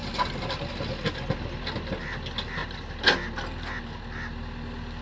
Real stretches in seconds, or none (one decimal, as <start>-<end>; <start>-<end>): 0.0-5.0